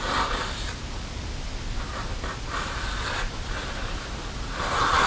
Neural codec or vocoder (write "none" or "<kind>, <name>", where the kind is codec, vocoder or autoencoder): vocoder, BigVGAN v2